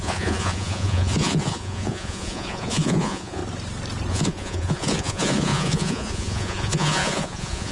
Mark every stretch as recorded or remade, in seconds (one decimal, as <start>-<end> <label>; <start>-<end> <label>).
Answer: 0.0-3.4 remade; 3.4-4.1 recorded; 4.1-7.7 remade